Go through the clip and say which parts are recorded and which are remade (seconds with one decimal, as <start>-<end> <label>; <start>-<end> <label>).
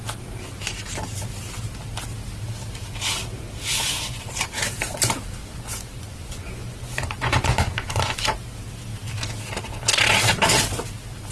0.0-3.8 recorded; 3.8-4.3 remade; 4.3-5.4 recorded; 5.4-8.2 remade; 8.2-11.3 recorded